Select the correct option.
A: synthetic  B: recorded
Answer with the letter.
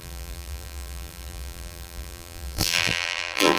A